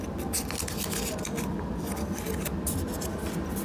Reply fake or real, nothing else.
real